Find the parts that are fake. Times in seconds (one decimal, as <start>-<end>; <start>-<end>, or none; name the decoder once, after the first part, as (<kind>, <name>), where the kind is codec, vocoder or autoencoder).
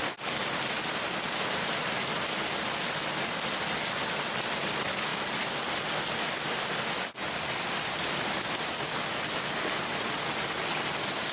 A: none